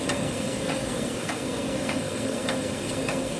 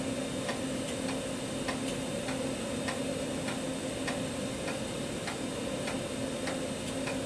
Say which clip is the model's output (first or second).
first